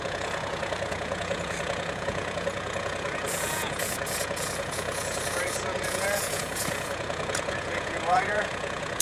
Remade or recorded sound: remade